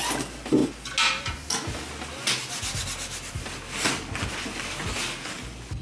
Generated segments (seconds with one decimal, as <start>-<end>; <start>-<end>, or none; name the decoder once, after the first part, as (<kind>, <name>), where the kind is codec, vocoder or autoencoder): none